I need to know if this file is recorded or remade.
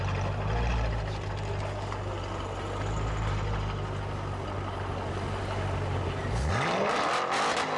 recorded